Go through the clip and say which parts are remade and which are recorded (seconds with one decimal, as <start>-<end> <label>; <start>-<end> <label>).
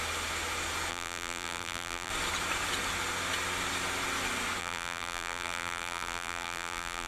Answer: 0.0-0.9 recorded; 0.9-2.1 remade; 2.1-4.6 recorded; 4.6-7.1 remade